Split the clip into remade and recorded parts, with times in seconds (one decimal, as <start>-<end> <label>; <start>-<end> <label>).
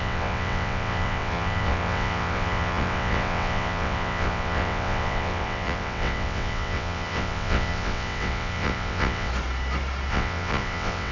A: 0.0-9.3 remade; 9.3-10.1 recorded; 10.1-11.1 remade